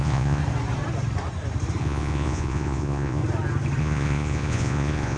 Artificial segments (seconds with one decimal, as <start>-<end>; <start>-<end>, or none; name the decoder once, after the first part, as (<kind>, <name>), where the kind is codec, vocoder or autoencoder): 0.0-0.4 (vocoder, Vocos); 1.8-3.2; 3.8-5.2